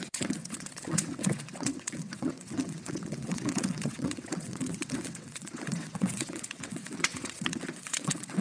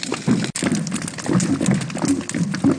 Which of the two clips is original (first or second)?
second